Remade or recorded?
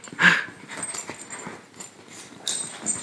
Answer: recorded